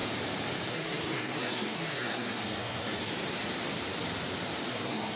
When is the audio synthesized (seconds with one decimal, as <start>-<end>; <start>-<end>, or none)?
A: 0.7-3.1; 4.7-5.2